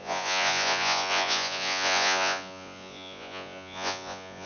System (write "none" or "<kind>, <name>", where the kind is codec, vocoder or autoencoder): vocoder, Vocos